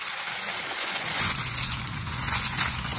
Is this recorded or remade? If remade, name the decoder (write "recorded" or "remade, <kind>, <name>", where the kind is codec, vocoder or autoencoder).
remade, vocoder, Vocos